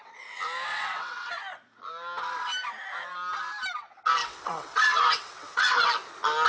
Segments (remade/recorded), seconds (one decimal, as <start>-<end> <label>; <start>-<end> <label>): 0.0-0.7 recorded; 0.7-1.4 remade; 1.4-4.2 recorded; 4.2-5.9 remade; 5.9-6.5 recorded